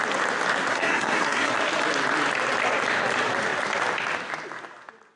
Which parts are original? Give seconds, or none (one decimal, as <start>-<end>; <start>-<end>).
0.0-0.7; 1.5-5.2